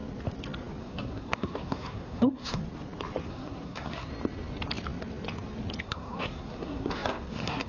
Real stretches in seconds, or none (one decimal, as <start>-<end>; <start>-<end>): 0.0-0.8; 2.6-3.3; 4.1-5.8